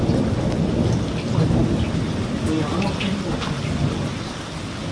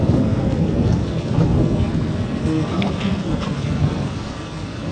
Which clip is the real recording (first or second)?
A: first